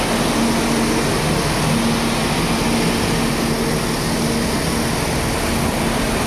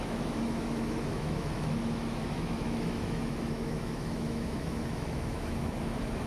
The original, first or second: first